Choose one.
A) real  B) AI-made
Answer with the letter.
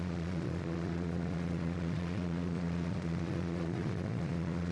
B